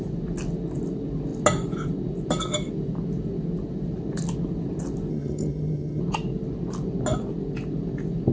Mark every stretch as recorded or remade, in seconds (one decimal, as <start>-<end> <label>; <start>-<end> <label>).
0.0-5.1 recorded; 5.1-6.0 remade; 6.0-8.3 recorded